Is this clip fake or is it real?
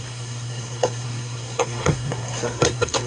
fake